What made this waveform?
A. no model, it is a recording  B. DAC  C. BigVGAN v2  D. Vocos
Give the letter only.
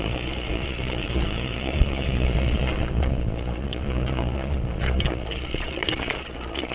D